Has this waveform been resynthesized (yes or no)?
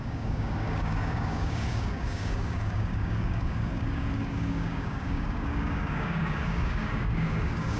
yes